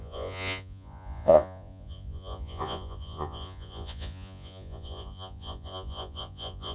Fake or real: fake